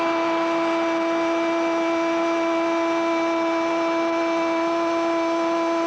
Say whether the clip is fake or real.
real